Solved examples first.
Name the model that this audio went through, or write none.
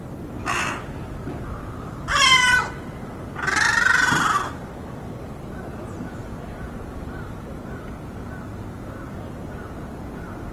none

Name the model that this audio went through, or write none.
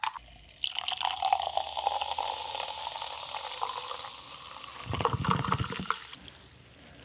none